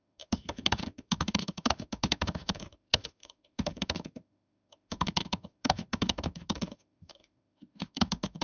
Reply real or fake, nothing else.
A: fake